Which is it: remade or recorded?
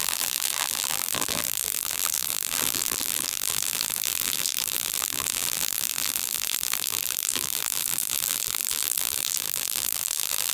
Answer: remade